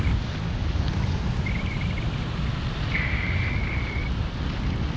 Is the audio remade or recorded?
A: recorded